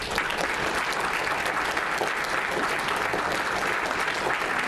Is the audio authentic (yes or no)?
yes